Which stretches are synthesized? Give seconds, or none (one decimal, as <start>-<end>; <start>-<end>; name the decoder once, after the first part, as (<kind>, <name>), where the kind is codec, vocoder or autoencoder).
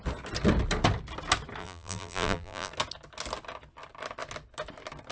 1.6-2.7 (vocoder, BigVGAN v2)